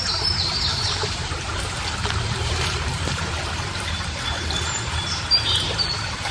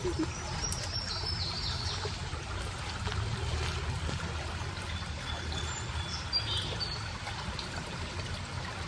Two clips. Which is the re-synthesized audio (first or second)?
first